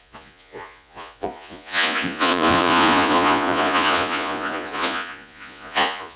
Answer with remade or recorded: remade